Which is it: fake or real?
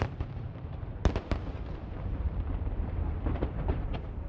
fake